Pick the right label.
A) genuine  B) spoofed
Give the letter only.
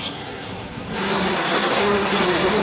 B